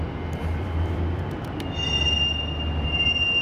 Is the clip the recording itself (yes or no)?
yes